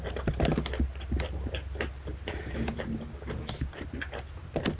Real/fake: real